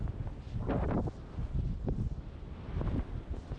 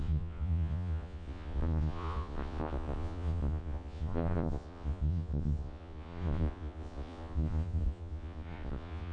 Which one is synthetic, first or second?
second